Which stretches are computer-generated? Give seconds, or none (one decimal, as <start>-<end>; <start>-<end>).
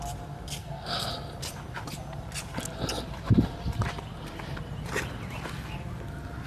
0.6-1.1